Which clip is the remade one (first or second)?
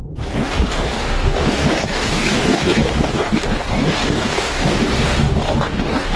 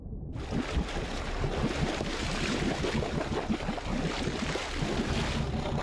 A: first